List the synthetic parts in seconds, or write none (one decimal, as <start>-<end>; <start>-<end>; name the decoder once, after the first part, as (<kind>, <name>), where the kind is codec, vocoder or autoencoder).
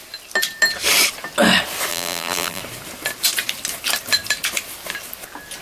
1.9-2.6 (vocoder, BigVGAN v2)